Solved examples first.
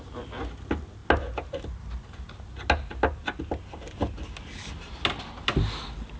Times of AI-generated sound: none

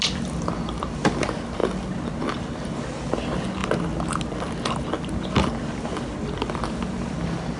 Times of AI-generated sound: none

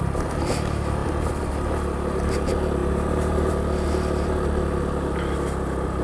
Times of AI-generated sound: none

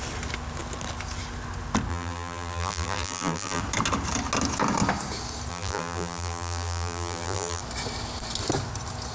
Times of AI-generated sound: 1.9-3.6 (vocoder, BigVGAN v2); 5.5-7.6